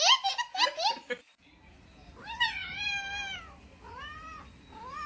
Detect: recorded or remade recorded